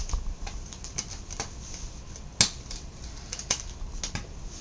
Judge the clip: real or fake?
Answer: real